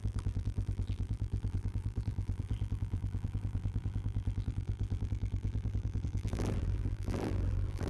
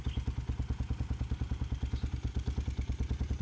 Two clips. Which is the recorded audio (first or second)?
second